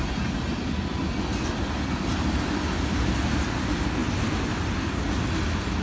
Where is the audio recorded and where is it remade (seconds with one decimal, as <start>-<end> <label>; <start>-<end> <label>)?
0.0-5.8 recorded